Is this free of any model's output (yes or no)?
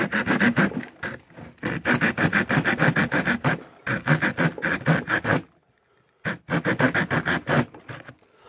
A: yes